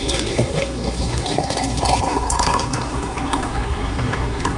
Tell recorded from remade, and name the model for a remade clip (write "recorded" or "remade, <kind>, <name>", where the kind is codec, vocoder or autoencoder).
remade, codec, SNAC